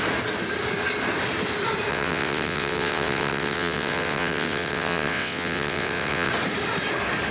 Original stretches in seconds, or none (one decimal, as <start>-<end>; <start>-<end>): 0.0-1.9; 6.3-7.3